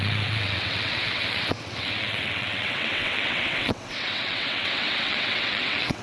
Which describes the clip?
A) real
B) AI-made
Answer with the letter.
B